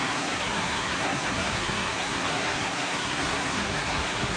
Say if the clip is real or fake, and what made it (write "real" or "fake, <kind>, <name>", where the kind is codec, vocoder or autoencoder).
fake, codec, SNAC